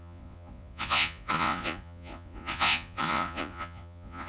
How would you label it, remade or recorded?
remade